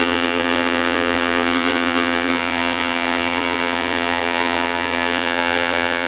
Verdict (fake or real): fake